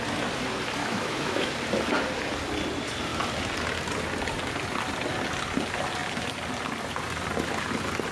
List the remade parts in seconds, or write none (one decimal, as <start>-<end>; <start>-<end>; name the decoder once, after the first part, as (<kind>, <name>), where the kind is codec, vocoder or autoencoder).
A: 0.8-1.5 (autoencoder, DAC-VAE)